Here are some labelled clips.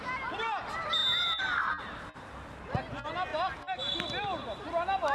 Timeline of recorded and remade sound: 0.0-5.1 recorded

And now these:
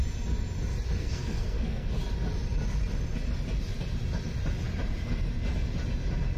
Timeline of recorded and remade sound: 0.0-1.0 recorded; 1.0-1.9 remade; 1.9-6.4 recorded

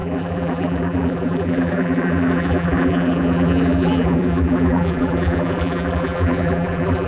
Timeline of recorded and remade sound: 0.0-7.1 remade